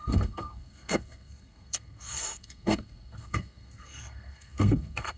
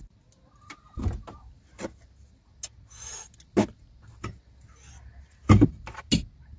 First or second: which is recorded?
second